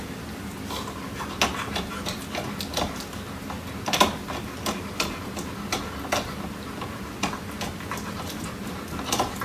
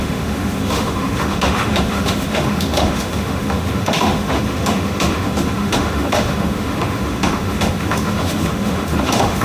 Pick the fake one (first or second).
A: second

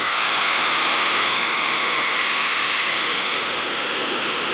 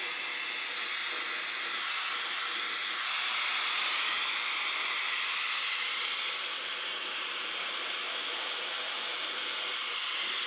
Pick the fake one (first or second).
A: first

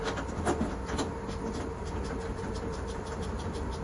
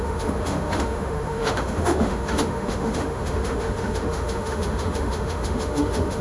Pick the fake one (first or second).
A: second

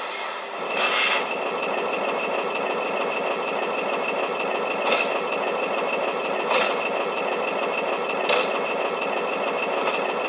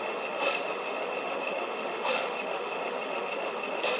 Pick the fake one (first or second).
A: second